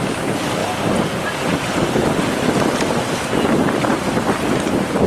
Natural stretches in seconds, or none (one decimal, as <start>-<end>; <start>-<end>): 0.0-5.1